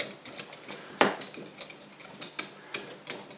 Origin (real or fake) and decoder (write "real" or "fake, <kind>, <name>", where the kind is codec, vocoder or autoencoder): real